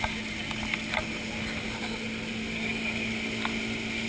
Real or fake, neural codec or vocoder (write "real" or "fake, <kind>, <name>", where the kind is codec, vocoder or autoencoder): real